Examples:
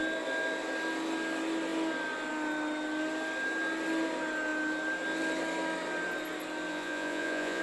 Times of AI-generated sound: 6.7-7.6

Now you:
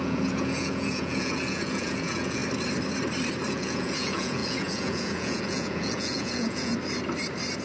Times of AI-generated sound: 0.0-2.4; 3.5-6.7

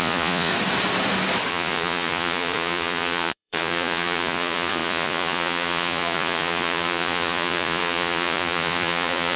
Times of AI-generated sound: 0.0-0.5; 1.5-9.4